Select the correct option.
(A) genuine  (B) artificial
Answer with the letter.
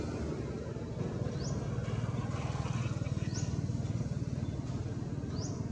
A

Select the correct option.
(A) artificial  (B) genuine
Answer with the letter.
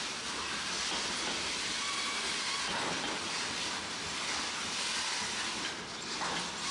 B